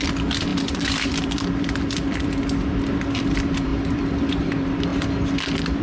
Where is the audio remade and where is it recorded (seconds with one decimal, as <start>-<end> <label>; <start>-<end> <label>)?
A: 0.0-4.9 remade; 4.9-5.8 recorded